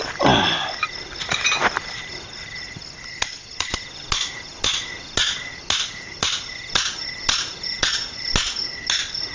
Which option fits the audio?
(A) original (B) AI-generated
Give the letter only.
A